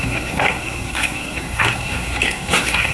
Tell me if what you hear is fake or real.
fake